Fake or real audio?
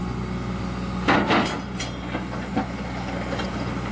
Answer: real